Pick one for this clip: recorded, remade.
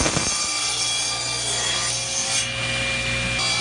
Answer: recorded